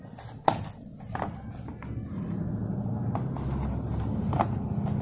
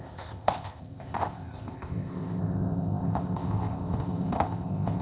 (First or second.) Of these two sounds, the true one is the first